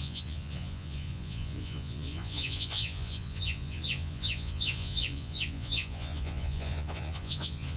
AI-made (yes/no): yes